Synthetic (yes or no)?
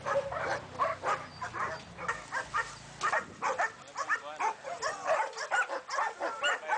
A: no